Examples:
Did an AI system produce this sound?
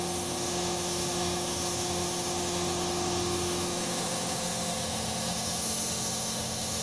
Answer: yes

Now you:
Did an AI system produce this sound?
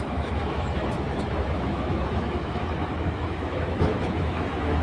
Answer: yes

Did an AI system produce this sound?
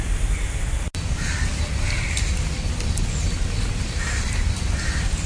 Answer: no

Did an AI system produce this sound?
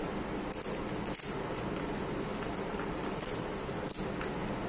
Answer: no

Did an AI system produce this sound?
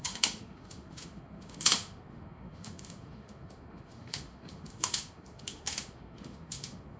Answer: yes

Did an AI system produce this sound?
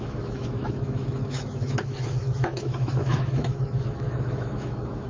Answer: yes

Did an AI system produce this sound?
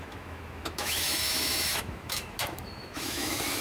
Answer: yes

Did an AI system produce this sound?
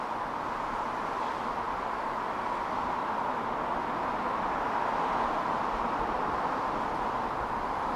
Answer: no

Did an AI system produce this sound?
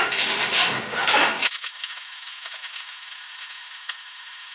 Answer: yes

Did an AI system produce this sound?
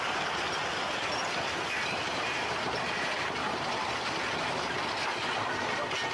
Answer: no